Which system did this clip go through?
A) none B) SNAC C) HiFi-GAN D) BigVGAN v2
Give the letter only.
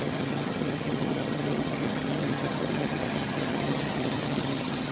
C